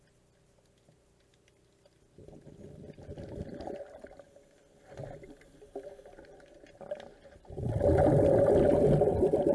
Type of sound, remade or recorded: recorded